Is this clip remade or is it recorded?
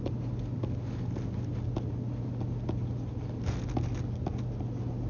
recorded